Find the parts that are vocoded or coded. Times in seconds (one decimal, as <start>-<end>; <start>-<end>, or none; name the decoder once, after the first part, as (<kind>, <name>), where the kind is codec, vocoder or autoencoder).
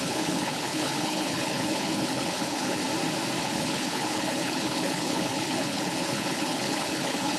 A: 0.0-2.8 (codec, HILCodec); 3.4-7.4